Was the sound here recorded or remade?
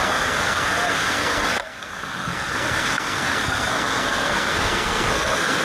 remade